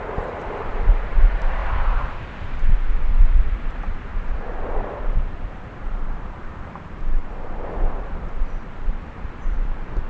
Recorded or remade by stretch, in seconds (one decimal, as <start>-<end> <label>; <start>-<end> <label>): 0.0-10.1 remade